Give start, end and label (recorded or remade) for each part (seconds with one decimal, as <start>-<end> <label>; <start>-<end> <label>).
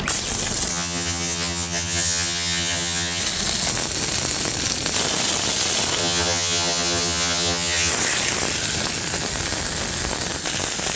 0.0-0.7 recorded; 0.7-3.2 remade; 3.2-6.0 recorded; 6.0-7.9 remade; 7.9-11.0 recorded